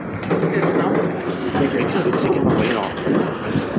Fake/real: fake